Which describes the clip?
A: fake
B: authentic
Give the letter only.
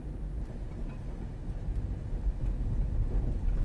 B